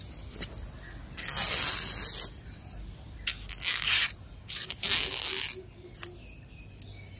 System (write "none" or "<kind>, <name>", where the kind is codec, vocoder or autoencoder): none